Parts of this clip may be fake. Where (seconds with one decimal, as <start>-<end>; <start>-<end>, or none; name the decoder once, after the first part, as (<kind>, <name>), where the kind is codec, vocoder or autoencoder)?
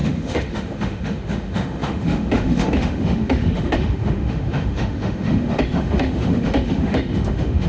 0.0-7.7 (autoencoder, DAC-VAE)